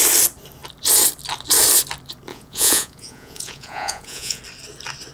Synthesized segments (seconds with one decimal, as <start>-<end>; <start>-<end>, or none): 2.3-4.4